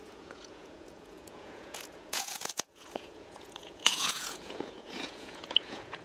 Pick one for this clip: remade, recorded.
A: remade